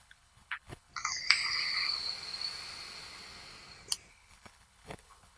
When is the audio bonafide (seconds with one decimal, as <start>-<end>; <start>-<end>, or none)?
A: 0.9-4.1